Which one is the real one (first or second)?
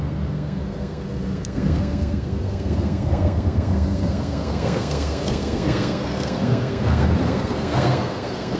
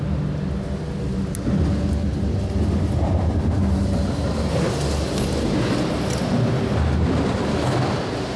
second